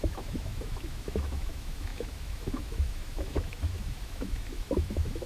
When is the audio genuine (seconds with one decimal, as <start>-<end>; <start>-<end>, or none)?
none